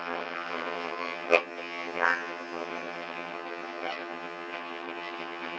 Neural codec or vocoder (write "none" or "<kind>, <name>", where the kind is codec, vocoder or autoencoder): vocoder, HiFi-GAN